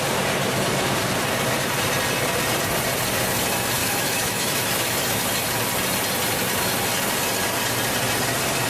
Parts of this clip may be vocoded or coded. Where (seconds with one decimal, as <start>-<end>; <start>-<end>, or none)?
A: 3.8-5.2